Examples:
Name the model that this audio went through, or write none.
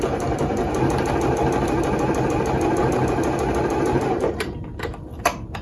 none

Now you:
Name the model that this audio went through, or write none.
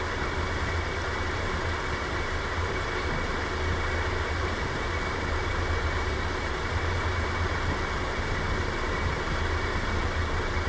none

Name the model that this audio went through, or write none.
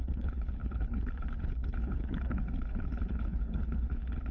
codec, HILCodec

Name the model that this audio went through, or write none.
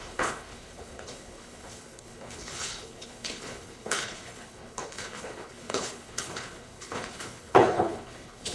codec, HILCodec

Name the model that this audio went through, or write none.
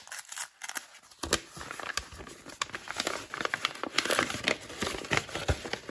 none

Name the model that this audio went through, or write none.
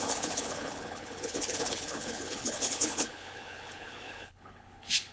codec, HILCodec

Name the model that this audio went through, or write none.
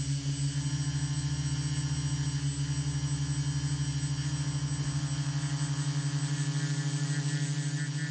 none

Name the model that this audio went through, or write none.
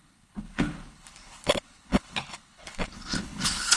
codec, HILCodec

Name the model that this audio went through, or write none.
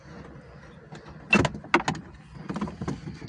none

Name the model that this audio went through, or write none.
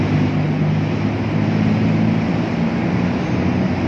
none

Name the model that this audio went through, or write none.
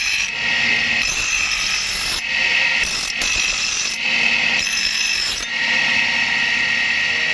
none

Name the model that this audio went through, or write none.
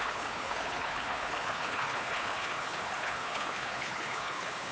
codec, HILCodec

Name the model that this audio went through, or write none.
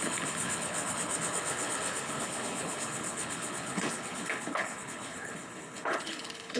codec, HILCodec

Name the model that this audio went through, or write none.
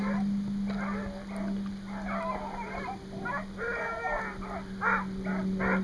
none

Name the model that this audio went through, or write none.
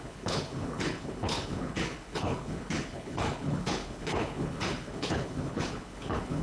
codec, HILCodec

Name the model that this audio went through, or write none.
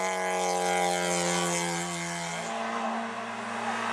none